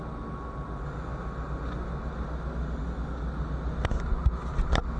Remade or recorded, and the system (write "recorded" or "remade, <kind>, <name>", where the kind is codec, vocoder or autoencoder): recorded